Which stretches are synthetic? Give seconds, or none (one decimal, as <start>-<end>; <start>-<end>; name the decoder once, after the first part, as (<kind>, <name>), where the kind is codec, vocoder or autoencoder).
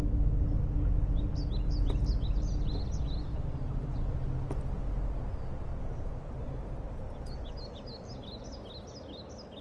3.3-4.1 (vocoder, BigVGAN v2); 5.7-6.4